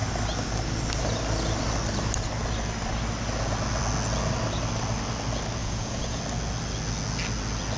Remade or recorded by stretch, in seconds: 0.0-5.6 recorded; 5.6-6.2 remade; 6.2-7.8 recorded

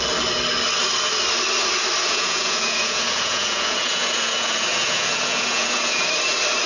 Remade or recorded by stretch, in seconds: 0.0-2.0 recorded; 2.0-6.0 remade; 6.0-6.7 recorded

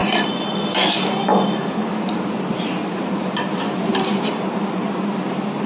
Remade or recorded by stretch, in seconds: 0.0-5.7 recorded

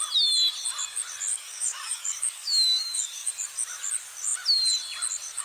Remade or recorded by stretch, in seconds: 0.0-1.3 recorded; 1.3-3.3 remade; 3.3-5.4 recorded

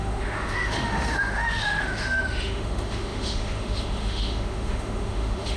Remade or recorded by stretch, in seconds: 0.0-5.6 remade

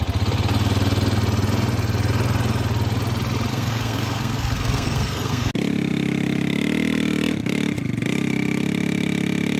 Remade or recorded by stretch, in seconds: 0.0-3.5 recorded; 3.5-5.5 remade; 5.5-9.6 recorded